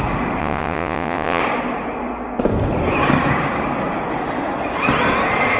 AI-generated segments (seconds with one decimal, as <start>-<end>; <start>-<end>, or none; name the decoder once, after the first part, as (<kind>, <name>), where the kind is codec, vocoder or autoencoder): 0.4-1.4 (vocoder, WaveNeXt)

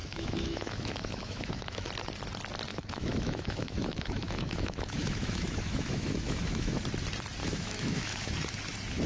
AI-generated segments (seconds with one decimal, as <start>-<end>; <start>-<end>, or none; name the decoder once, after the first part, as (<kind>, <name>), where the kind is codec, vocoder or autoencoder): 0.0-1.9 (autoencoder, DAC-VAE); 2.7-6.8; 7.4-8.3

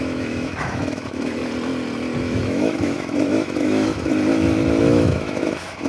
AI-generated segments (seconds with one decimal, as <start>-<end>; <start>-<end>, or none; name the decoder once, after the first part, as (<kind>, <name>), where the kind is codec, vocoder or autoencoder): 0.0-1.4 (autoencoder, DAC-VAE); 2.2-4.1; 4.8-5.9

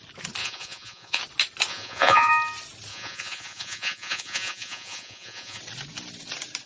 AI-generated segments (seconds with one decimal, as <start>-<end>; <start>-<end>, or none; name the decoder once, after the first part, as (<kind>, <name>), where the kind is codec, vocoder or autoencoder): 0.4-1.2 (vocoder, Vocos); 1.7-2.3; 2.9-5.6